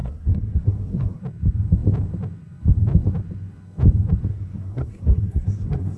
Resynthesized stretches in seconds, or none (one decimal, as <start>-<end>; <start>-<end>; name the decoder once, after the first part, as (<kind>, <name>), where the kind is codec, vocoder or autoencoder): 0.0-1.2 (codec, SNAC); 4.3-6.0